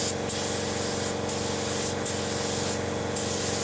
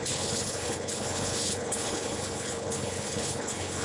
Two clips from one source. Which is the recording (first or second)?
first